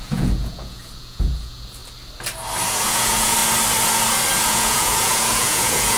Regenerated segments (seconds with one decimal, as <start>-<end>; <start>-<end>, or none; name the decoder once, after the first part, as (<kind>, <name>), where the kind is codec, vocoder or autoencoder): 0.0-1.8 (vocoder, Vocos); 2.7-3.4; 4.5-6.0